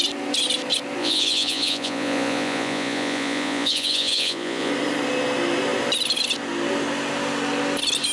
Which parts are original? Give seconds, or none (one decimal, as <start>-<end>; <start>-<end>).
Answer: 0.0-1.0; 4.7-8.1